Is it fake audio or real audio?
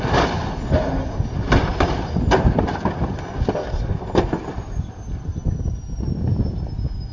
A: real